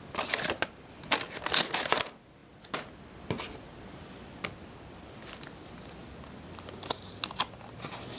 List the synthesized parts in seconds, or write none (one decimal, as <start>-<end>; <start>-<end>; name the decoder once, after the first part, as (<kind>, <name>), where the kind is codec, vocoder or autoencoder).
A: none